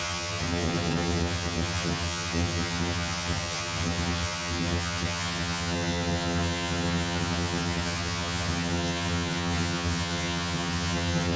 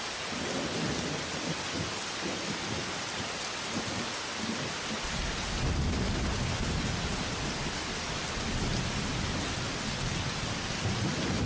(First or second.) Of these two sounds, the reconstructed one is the first